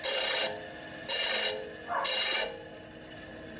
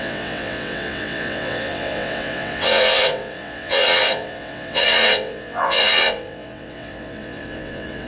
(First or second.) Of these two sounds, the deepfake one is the second